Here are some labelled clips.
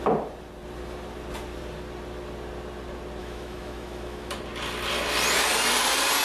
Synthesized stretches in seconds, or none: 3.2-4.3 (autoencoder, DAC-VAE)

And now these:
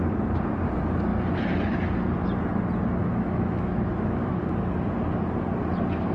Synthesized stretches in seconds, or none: 3.0-4.4 (autoencoder, DAC-VAE)

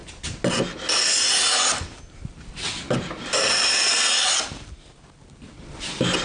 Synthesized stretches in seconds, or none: none

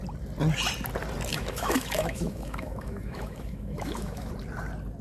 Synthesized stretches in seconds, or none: 1.3-4.3 (autoencoder, DAC-VAE)

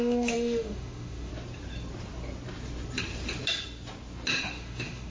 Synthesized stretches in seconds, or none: 0.0-1.3 (autoencoder, DAC-VAE); 4.4-5.1

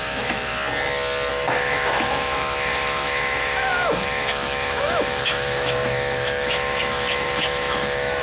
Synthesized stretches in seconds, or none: 0.0-0.5 (autoencoder, DAC-VAE); 1.3-8.2

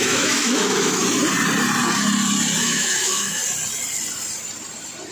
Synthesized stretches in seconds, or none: 0.0-1.0 (autoencoder, DAC-VAE); 2.6-3.4

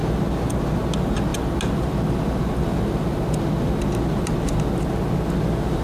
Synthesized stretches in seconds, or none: none